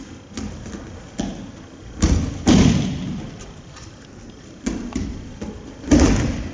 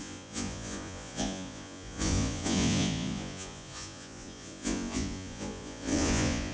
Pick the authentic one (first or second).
first